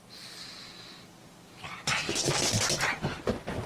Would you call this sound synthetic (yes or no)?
yes